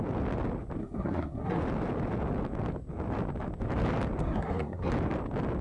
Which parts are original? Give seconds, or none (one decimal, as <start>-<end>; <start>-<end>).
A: 0.0-0.8; 1.6-4.2; 4.9-5.6